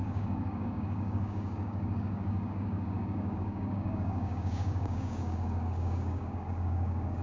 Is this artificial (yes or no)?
yes